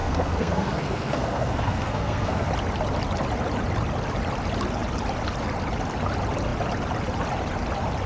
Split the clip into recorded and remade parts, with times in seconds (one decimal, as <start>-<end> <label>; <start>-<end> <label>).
0.0-2.5 remade; 2.5-8.1 recorded